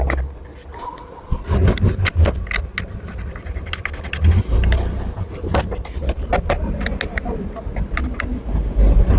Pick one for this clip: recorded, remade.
recorded